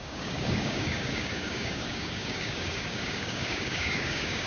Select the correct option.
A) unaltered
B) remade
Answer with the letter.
B